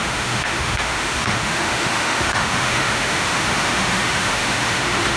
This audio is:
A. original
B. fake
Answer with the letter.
B